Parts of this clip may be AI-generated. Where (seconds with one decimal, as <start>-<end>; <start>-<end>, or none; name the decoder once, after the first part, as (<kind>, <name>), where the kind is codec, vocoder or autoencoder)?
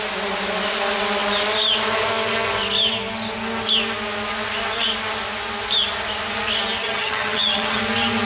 6.8-7.8 (vocoder, HiFi-GAN)